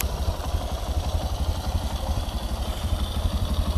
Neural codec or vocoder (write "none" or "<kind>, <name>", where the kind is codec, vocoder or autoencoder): vocoder, BigVGAN v2